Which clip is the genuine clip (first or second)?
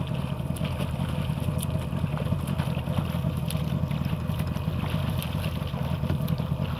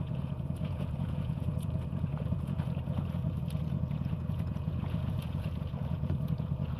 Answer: first